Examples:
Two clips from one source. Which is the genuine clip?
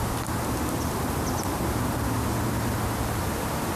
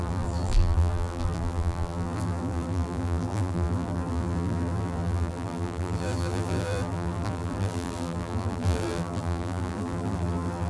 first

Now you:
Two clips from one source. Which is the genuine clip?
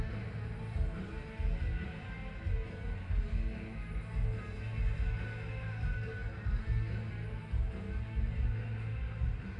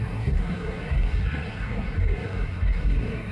first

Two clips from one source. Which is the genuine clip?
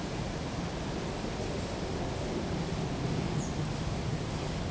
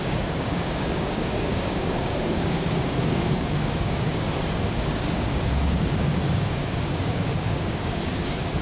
first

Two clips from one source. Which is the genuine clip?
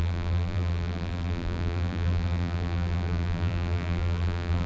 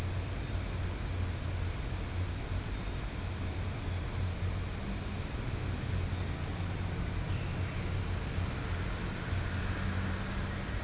second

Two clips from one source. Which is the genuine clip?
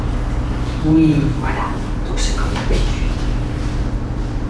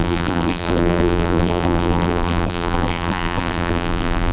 first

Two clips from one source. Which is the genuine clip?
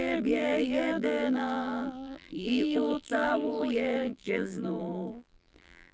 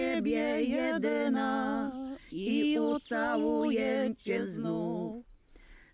second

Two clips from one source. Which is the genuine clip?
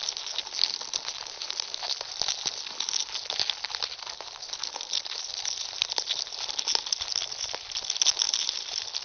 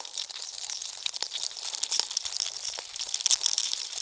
first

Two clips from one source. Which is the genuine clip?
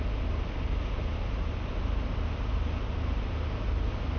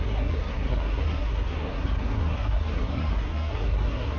first